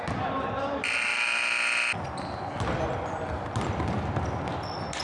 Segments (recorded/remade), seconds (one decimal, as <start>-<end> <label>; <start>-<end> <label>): 0.0-5.0 recorded